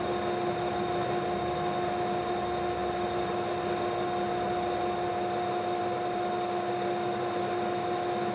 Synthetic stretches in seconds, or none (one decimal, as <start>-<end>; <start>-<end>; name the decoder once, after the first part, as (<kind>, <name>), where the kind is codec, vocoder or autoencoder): none